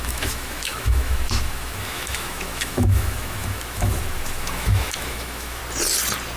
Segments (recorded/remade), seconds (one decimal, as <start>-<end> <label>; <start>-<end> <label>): 0.0-5.6 remade; 5.6-6.4 recorded